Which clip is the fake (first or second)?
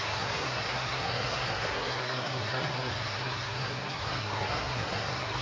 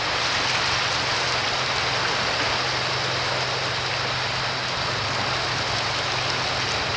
first